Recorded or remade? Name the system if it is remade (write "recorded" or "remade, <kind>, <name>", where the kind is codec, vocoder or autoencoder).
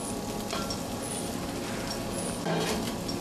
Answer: recorded